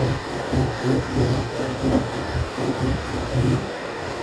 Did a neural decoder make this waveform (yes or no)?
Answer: yes